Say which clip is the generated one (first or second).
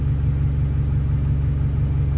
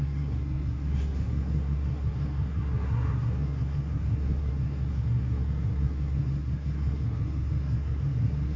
second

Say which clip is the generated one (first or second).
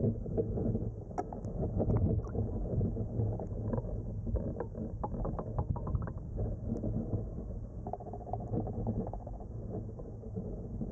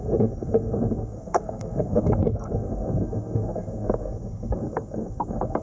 second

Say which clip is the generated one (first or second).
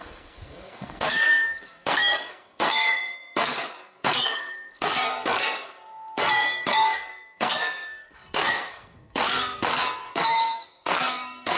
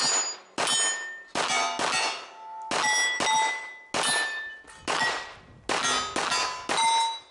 first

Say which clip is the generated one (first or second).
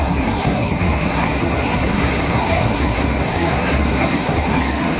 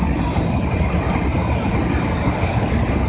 first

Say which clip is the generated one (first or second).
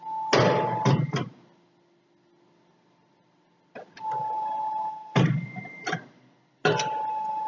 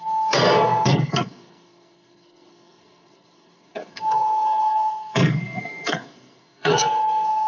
second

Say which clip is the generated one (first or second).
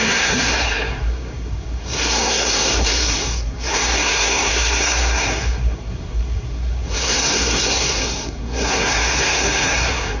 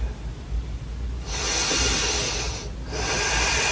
first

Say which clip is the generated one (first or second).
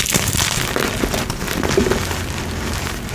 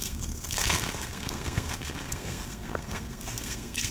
second